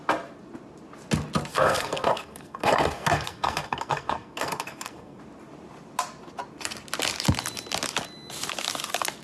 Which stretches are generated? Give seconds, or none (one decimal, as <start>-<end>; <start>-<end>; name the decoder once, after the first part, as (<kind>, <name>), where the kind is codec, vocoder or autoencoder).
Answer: 1.5-5.2 (codec, SNAC)